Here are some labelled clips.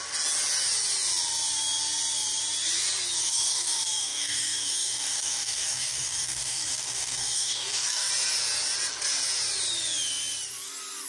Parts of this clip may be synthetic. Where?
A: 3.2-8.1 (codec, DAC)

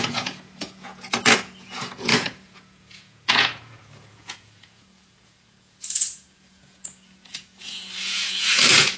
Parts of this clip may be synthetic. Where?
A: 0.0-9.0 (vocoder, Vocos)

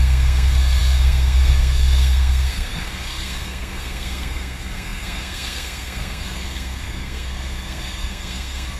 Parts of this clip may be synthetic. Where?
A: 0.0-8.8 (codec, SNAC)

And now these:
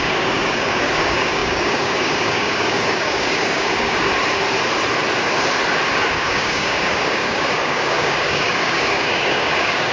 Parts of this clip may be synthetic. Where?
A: 0.0-4.1 (codec, DAC); 6.1-9.9

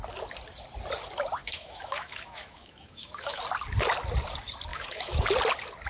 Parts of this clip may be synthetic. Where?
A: 1.4-3.4 (autoencoder, DAC-VAE); 4.7-5.3

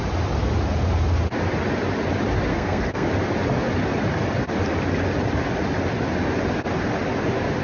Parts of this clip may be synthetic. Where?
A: 2.5-3.1 (codec, SNAC)

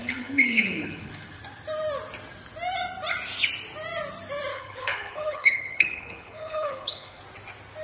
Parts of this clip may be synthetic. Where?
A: 0.0-1.4 (codec, HILCodec); 4.5-7.2

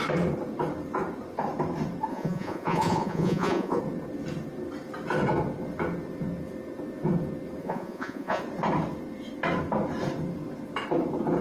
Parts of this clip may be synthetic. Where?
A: 2.1-3.8 (vocoder, Vocos); 7.6-8.4